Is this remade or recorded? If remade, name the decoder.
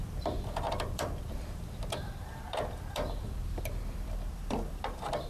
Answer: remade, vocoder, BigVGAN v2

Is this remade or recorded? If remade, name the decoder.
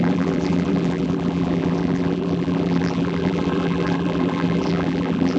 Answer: remade, vocoder, BigVGAN v2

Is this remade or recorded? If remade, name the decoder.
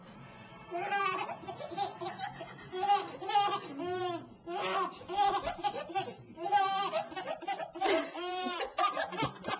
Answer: remade, vocoder, BigVGAN v2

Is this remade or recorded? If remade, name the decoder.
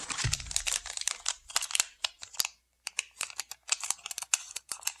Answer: remade, vocoder, BigVGAN v2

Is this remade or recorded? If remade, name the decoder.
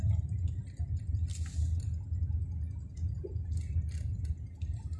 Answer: recorded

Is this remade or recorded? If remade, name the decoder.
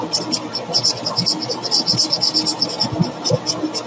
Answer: recorded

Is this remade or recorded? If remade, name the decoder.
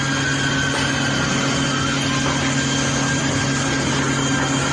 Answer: recorded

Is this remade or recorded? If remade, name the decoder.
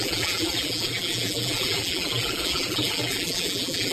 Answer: remade, vocoder, BigVGAN v2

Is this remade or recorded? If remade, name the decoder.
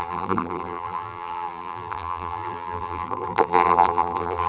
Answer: remade, vocoder, BigVGAN v2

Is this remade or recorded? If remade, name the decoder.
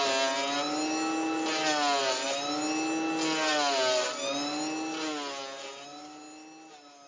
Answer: recorded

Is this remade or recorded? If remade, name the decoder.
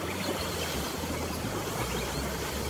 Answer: remade, vocoder, BigVGAN v2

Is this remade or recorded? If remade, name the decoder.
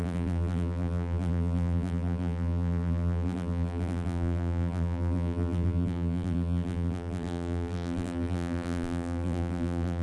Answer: remade, vocoder, BigVGAN v2